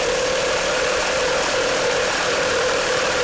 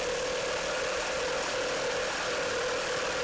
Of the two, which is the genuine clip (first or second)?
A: second